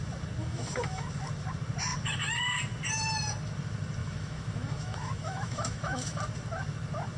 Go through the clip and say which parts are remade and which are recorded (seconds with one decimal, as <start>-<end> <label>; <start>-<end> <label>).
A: 0.0-0.4 recorded; 0.4-1.1 remade; 1.1-4.0 recorded; 4.0-6.2 remade; 6.2-7.2 recorded